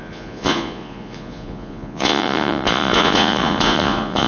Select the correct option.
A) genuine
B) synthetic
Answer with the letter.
B